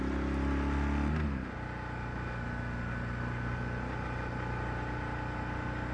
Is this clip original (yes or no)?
yes